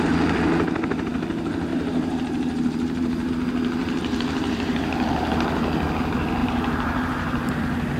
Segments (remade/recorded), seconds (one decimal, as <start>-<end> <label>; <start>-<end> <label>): 0.0-1.7 recorded; 1.7-3.3 remade; 3.3-3.8 recorded; 3.8-5.3 remade; 5.3-6.4 recorded; 6.4-7.6 remade; 7.6-8.0 recorded